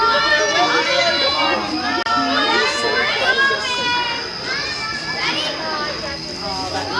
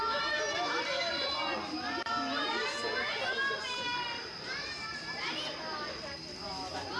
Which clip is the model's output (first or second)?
second